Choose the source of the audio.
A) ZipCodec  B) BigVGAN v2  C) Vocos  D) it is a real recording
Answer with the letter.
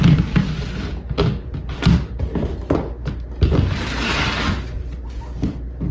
D